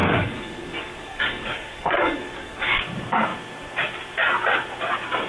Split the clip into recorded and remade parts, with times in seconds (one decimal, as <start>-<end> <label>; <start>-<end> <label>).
0.0-2.8 remade; 2.8-5.3 recorded